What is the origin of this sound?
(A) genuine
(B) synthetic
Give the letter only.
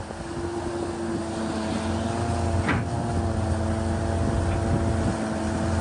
A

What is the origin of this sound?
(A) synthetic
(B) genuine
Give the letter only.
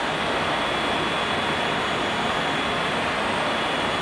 B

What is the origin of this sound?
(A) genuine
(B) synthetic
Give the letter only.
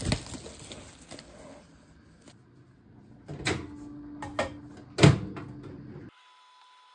A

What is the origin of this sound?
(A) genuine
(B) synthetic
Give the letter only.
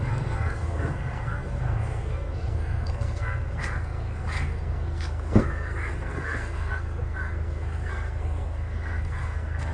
B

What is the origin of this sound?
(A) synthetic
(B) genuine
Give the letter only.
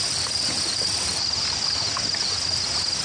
B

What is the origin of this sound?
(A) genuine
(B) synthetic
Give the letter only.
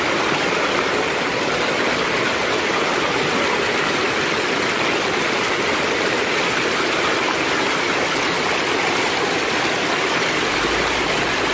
A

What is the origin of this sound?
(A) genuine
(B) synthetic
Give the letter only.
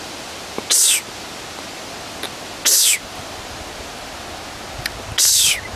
A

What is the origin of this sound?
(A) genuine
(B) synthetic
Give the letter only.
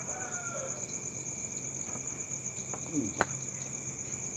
A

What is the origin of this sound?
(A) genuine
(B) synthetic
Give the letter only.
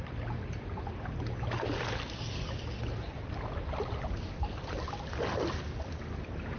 B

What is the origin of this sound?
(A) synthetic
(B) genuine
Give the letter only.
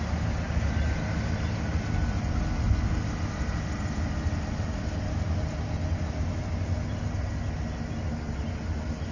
B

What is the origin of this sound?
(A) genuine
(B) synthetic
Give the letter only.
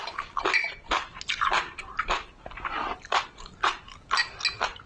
A